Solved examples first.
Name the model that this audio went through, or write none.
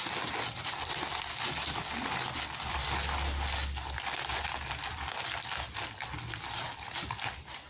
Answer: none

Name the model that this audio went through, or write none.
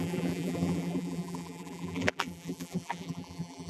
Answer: vocoder, BigVGAN v2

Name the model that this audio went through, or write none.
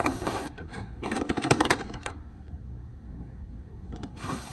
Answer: codec, SNAC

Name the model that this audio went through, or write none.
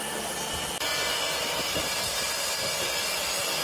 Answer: none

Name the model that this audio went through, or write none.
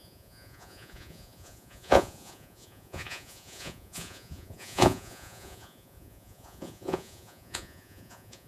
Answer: vocoder, Vocos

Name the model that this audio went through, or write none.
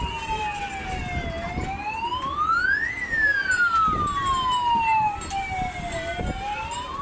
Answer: none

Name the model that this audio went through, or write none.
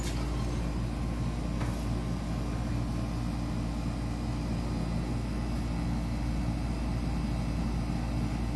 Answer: none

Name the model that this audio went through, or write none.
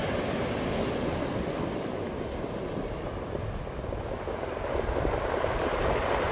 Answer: none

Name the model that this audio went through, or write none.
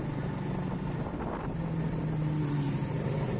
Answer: none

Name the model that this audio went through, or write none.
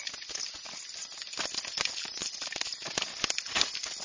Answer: none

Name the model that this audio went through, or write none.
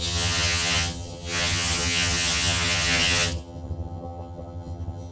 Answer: vocoder, HiFi-GAN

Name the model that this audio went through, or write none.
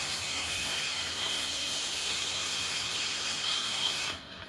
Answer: codec, SNAC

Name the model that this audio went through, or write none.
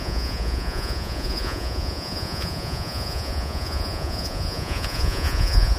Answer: vocoder, Vocos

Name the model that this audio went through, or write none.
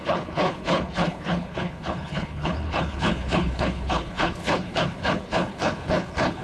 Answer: codec, HILCodec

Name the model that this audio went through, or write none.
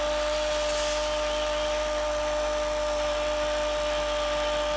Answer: none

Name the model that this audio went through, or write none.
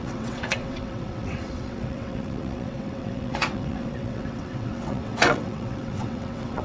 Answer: vocoder, WaveNeXt